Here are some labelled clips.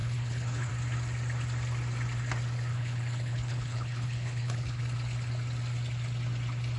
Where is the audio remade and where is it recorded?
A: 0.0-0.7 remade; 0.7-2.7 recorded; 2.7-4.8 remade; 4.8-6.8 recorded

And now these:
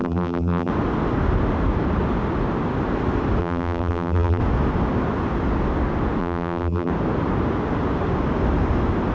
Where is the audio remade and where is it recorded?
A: 0.0-0.7 remade; 0.7-3.4 recorded; 3.4-4.4 remade; 4.4-6.2 recorded; 6.2-6.9 remade; 6.9-9.1 recorded

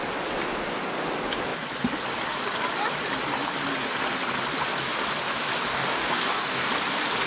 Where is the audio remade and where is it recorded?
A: 0.0-5.7 recorded; 5.7-6.7 remade; 6.7-7.3 recorded

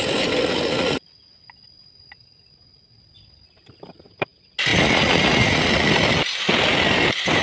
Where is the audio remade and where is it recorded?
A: 0.0-0.4 recorded; 0.4-1.4 remade; 1.4-4.7 recorded; 4.7-5.9 remade; 5.9-7.4 recorded

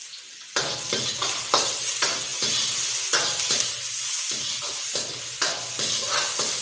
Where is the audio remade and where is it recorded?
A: 0.0-0.5 recorded; 0.5-1.1 remade; 1.1-2.3 recorded; 2.3-6.6 remade